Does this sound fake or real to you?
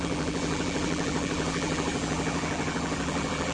fake